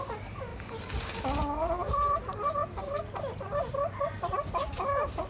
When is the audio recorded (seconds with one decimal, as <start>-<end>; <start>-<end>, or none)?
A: 0.0-5.3